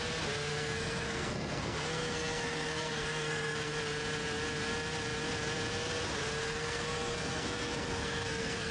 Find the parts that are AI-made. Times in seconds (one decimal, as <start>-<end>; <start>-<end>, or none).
0.5-3.7; 6.4-8.7